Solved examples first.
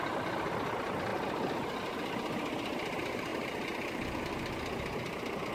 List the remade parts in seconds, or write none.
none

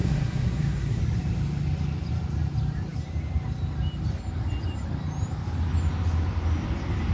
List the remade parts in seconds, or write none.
0.0-1.0 (codec, SNAC)

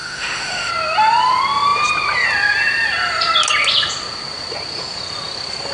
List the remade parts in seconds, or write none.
0.0-0.7 (autoencoder, DAC-VAE)

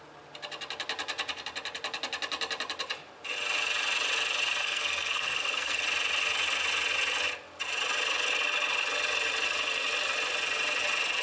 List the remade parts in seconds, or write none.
4.6-5.8 (codec, SNAC)

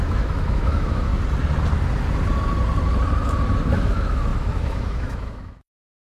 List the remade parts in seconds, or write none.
0.0-1.1 (autoencoder, DAC-VAE); 3.7-6.0

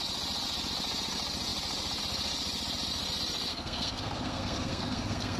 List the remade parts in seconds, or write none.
3.5-5.4 (codec, SNAC)

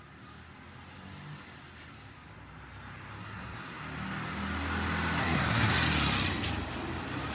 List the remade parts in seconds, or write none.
3.2-3.8 (codec, SNAC); 5.2-5.7

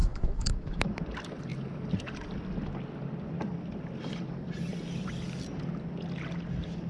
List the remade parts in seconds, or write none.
0.0-1.0 (autoencoder, DAC-VAE)